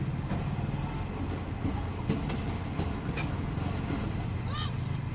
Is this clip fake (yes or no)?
no